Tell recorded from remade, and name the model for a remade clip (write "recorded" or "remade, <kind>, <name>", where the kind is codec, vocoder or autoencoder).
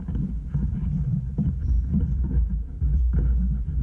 remade, vocoder, BigVGAN v2